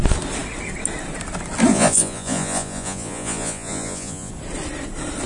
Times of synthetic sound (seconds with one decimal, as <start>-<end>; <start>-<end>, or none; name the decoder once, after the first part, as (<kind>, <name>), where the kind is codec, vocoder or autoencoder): 1.7-4.3 (vocoder, Vocos)